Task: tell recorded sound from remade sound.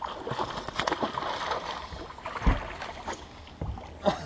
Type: recorded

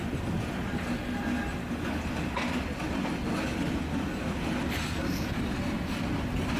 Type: recorded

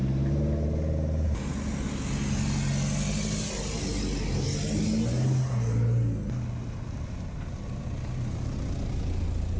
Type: recorded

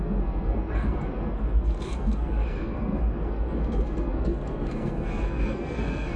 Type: remade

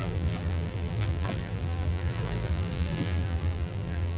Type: remade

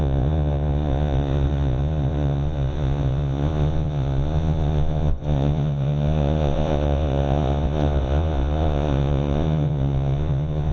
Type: remade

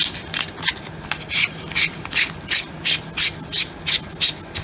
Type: recorded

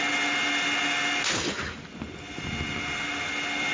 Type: recorded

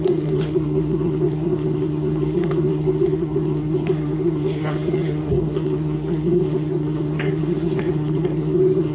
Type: remade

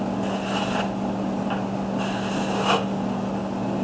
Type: recorded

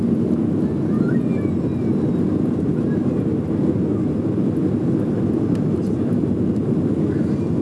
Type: recorded